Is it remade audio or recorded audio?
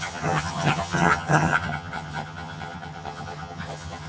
remade